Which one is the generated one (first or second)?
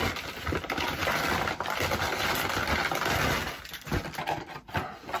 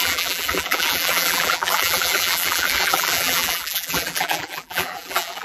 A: second